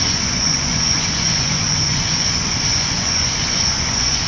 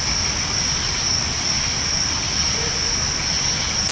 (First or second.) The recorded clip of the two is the second